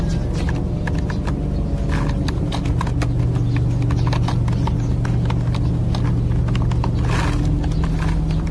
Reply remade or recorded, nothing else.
recorded